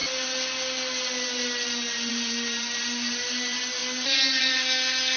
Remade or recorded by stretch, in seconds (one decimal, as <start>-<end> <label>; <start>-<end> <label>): 0.0-2.1 recorded; 2.1-3.8 remade; 3.8-4.4 recorded; 4.4-5.2 remade